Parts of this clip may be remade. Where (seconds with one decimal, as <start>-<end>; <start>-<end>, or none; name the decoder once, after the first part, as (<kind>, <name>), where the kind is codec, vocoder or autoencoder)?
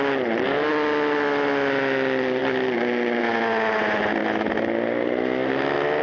none